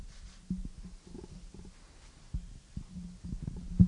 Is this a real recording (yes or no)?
yes